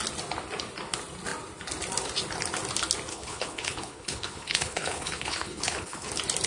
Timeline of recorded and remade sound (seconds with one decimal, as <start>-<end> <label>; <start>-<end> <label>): 0.0-3.1 recorded; 3.1-6.1 remade; 6.1-6.5 recorded